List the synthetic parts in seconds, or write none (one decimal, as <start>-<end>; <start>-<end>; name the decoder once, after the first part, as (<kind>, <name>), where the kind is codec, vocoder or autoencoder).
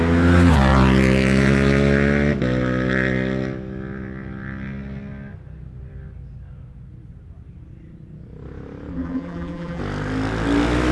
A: 8.9-9.8 (vocoder, BigVGAN v2)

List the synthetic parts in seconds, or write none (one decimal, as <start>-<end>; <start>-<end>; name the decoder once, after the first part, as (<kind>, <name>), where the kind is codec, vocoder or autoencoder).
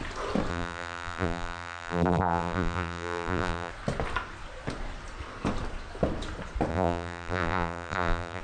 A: 0.5-3.7 (vocoder, BigVGAN v2); 6.7-8.4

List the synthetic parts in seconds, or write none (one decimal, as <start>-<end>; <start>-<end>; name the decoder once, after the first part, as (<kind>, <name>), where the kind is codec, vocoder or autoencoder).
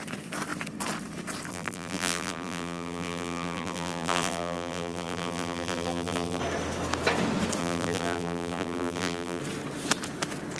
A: 1.5-6.4 (vocoder, BigVGAN v2); 7.6-9.4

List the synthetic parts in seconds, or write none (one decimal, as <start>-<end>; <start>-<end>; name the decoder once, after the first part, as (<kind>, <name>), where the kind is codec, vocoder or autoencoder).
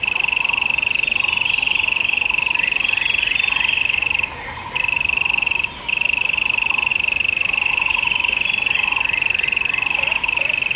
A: 6.9-7.7 (vocoder, BigVGAN v2)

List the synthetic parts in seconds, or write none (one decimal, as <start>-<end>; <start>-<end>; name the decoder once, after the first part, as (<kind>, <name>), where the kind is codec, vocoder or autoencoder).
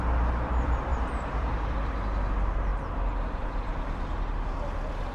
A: 0.9-2.0 (vocoder, BigVGAN v2)